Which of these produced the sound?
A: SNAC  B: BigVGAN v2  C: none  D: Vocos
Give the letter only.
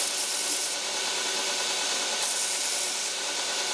C